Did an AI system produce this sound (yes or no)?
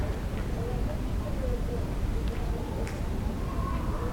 no